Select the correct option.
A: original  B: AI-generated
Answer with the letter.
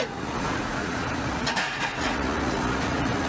B